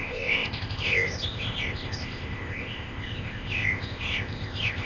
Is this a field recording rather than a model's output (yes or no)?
no